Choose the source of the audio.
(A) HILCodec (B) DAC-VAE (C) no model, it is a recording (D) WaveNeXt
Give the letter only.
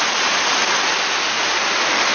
C